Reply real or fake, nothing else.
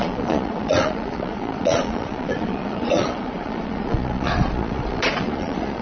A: fake